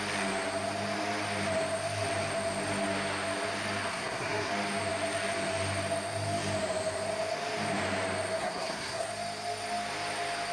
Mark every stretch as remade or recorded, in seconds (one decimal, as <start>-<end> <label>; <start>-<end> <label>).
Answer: 0.0-3.9 recorded; 3.9-4.5 remade; 4.5-8.4 recorded; 8.4-9.1 remade; 9.1-10.5 recorded